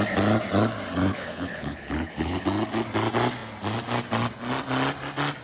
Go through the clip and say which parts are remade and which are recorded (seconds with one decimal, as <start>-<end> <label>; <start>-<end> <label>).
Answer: 0.0-1.1 recorded; 1.1-2.4 remade; 2.4-5.4 recorded